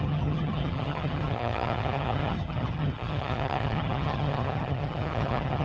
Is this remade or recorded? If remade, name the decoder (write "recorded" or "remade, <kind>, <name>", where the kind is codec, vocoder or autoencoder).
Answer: remade, vocoder, HiFi-GAN